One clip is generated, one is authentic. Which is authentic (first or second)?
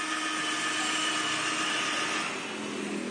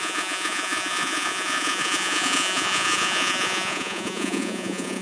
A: first